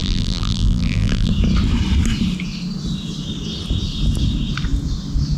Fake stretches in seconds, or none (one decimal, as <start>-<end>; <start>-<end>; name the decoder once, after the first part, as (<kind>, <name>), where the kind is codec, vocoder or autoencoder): 0.0-1.3 (vocoder, BigVGAN v2)